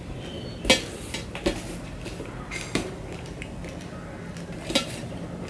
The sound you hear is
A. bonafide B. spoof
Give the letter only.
A